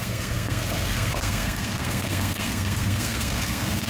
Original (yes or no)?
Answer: no